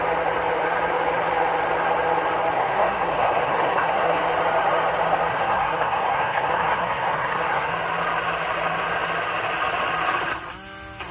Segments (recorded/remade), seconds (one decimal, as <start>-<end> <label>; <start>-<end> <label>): 0.0-2.6 recorded; 2.6-4.2 remade; 4.2-5.3 recorded; 5.3-7.7 remade; 7.7-11.1 recorded